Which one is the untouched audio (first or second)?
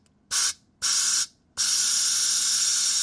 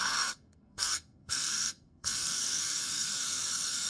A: first